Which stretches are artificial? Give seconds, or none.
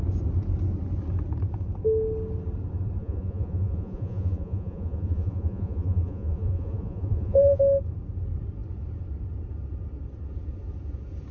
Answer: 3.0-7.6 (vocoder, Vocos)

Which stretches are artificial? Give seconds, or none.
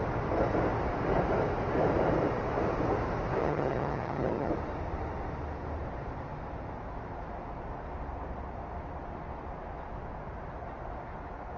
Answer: 3.4-4.5 (vocoder, HiFi-GAN)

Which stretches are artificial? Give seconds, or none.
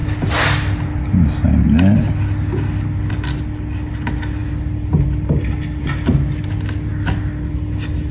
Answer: none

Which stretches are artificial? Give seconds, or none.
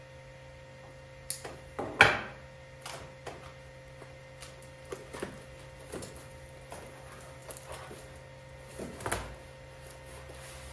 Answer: none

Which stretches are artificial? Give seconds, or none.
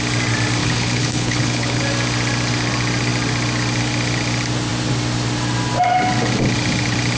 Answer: 0.6-1.8 (codec, HILCodec)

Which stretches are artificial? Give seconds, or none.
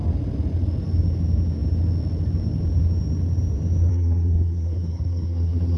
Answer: 3.9-5.8 (codec, SNAC)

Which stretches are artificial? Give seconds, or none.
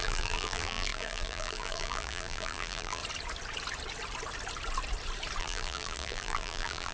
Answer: 0.0-3.0 (vocoder, BigVGAN v2); 5.4-6.9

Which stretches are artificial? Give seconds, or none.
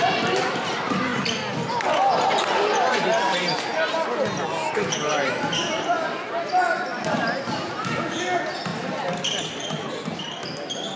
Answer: 6.9-7.9 (vocoder, BigVGAN v2); 8.7-9.9